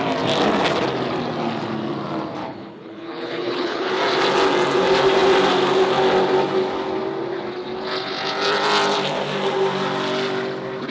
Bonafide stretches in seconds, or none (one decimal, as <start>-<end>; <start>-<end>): 0.0-2.4; 3.9-10.9

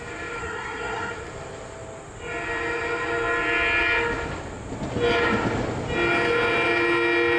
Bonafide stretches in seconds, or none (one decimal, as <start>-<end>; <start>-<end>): 0.0-0.4; 1.1-7.4

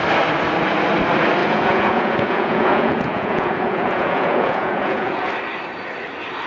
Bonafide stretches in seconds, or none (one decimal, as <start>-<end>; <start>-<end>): 0.0-1.4; 5.3-6.5